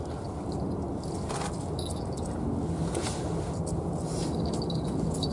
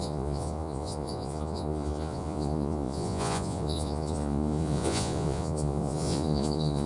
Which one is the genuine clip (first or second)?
first